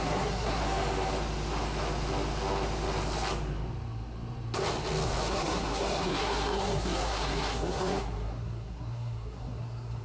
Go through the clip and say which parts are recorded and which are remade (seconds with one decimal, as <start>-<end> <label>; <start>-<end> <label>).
0.0-0.6 remade; 0.6-5.3 recorded; 5.3-10.0 remade